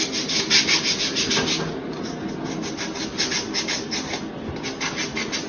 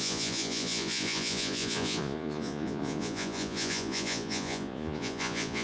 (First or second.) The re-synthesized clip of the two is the second